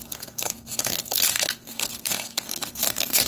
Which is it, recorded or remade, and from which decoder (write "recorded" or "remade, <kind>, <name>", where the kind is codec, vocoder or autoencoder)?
remade, codec, SNAC